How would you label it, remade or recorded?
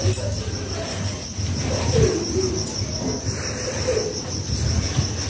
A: recorded